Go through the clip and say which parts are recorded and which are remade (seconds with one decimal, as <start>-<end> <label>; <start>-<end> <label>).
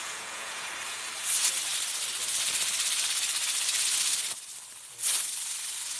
0.0-0.7 remade; 0.7-6.0 recorded